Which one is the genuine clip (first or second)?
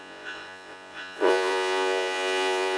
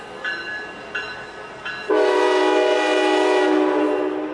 second